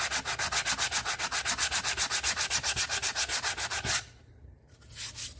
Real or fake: real